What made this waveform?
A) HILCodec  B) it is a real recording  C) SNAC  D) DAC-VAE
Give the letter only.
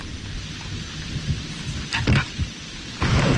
B